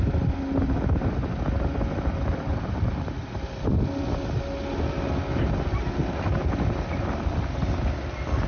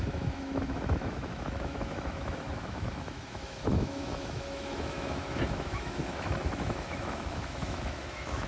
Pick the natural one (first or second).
first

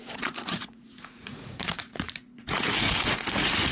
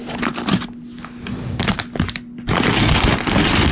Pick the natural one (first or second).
second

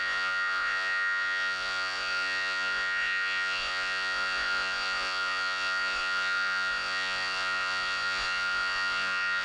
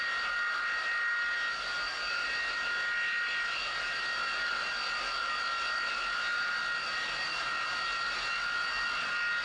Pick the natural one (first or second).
second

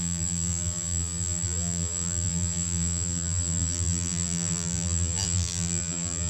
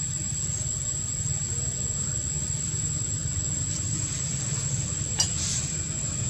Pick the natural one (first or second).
second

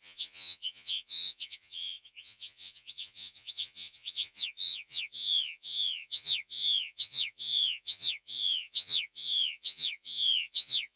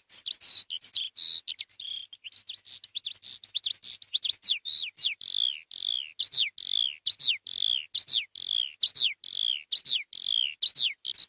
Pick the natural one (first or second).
second